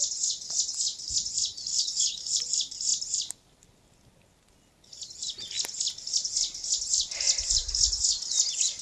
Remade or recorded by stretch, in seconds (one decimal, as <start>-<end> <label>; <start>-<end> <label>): 0.0-1.7 recorded; 1.7-2.4 remade; 2.4-8.8 recorded